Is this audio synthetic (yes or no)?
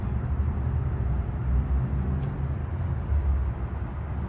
no